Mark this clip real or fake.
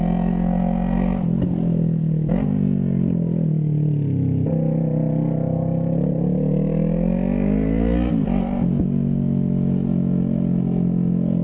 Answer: real